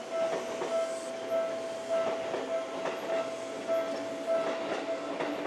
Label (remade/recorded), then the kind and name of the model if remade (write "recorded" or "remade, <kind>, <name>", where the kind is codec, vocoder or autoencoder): recorded